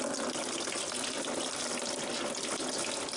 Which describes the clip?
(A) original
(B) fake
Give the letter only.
A